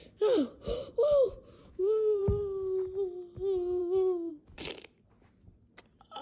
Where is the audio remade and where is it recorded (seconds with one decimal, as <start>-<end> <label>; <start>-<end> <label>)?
0.0-1.6 recorded; 1.6-2.2 remade; 2.2-3.8 recorded; 3.8-4.3 remade; 4.3-6.2 recorded